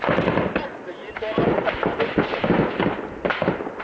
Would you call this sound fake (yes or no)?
no